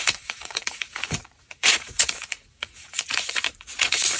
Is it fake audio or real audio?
fake